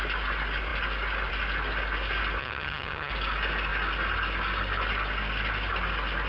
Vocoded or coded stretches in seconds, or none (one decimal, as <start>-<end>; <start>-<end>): 2.4-3.1